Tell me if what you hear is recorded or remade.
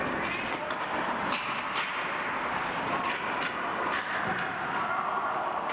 recorded